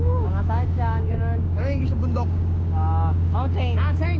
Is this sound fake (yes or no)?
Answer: yes